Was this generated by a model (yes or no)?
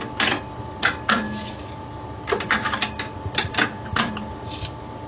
no